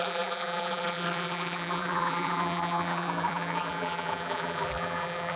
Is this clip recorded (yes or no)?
no